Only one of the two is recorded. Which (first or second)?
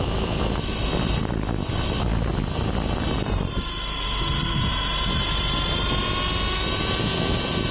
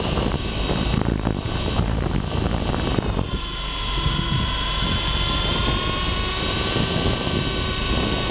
first